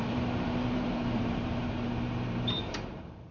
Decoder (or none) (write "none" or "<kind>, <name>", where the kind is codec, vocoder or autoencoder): vocoder, BigVGAN v2